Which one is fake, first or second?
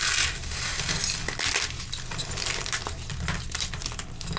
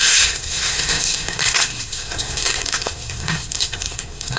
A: second